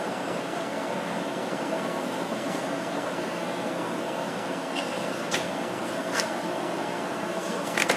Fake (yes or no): yes